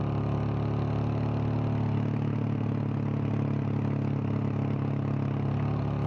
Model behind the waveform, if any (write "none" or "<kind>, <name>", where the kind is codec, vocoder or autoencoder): none